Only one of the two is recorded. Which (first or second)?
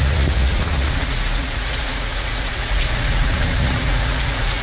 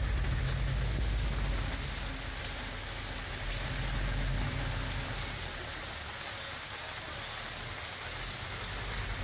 second